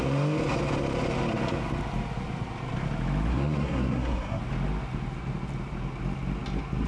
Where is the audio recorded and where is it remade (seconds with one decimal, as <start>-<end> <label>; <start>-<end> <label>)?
0.0-3.3 recorded; 3.3-4.4 remade; 4.4-6.9 recorded